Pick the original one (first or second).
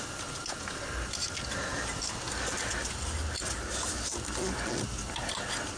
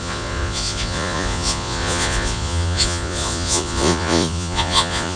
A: first